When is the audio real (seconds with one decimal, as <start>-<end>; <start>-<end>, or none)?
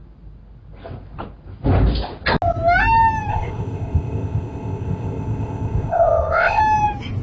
0.0-3.3; 6.6-7.2